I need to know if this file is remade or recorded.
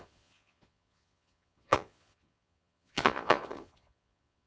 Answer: remade